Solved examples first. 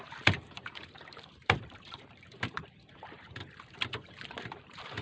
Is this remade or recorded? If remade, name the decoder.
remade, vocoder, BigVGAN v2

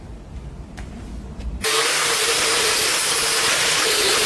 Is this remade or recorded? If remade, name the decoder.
recorded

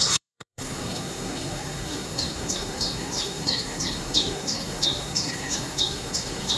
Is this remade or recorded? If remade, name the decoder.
remade, codec, SNAC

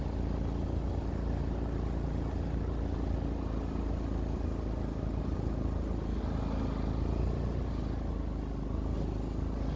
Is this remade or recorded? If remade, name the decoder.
recorded